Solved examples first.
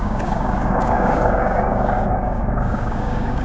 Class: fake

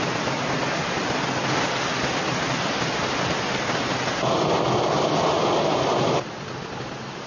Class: real